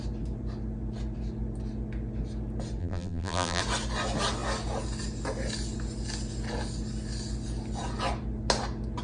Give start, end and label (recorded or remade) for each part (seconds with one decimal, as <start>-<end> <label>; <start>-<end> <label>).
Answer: 0.0-2.8 recorded; 2.8-3.6 remade; 3.6-9.0 recorded